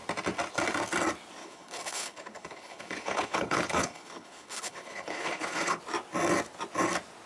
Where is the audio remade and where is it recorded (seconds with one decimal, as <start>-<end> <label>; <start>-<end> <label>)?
0.0-1.4 recorded; 1.4-5.8 remade; 5.8-7.3 recorded